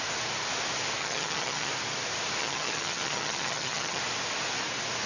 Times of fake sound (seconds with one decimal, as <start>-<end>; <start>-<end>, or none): 1.0-1.7; 2.4-4.0

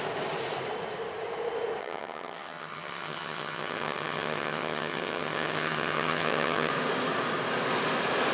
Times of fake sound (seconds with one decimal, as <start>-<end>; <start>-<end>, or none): 1.8-6.7

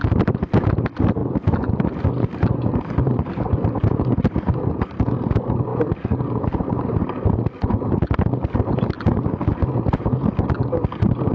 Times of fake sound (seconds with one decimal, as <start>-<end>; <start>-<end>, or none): none

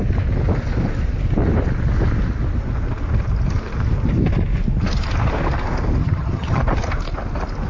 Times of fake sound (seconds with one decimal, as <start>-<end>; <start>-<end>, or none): 6.0-6.6

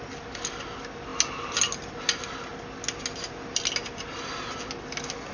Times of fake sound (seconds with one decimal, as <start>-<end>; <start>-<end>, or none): none

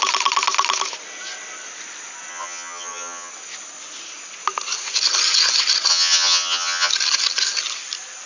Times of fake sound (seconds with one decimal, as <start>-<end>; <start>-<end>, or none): 2.3-3.3; 5.9-6.9